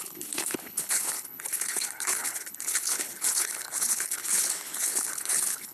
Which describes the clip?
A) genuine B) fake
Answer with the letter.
B